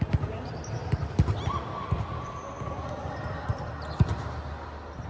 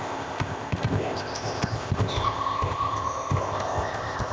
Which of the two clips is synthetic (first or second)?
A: second